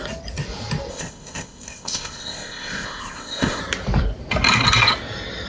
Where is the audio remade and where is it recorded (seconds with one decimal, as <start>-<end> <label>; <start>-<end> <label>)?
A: 0.0-0.9 recorded; 0.9-3.6 remade; 3.6-5.5 recorded